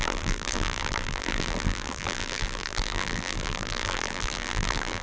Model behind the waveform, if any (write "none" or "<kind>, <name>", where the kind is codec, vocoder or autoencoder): vocoder, BigVGAN v2